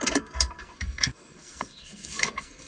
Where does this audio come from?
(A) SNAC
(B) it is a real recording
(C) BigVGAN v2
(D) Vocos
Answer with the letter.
A